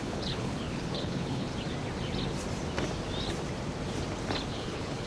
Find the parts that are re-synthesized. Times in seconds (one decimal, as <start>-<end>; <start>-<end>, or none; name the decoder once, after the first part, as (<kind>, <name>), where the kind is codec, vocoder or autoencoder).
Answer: 0.0-1.5 (codec, HILCodec); 4.5-5.1